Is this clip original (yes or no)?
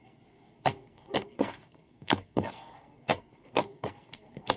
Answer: no